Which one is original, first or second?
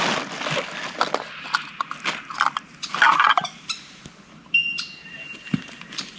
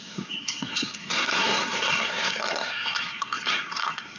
first